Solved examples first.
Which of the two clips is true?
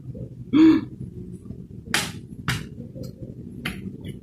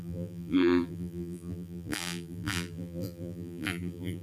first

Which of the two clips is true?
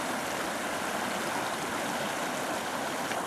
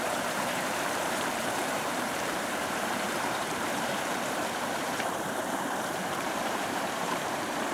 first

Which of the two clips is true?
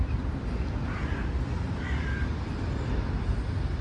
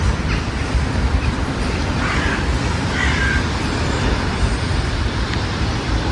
first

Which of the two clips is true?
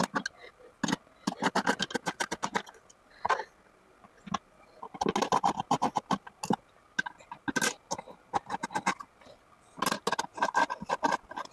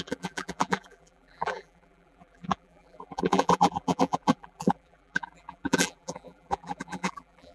first